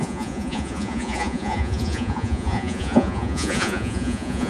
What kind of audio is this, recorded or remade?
remade